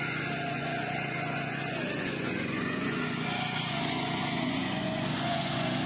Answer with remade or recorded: remade